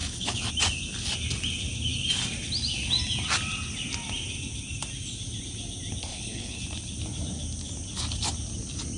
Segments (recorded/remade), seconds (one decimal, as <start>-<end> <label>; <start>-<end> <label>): 0.0-0.5 remade; 0.5-6.1 recorded; 6.1-6.6 remade; 6.6-9.0 recorded